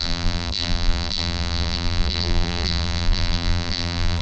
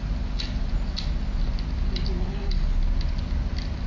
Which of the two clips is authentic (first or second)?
second